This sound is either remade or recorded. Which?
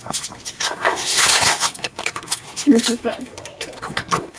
remade